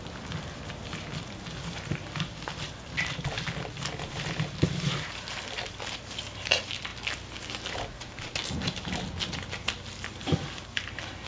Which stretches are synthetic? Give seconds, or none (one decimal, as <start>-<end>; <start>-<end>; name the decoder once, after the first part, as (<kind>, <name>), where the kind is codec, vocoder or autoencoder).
none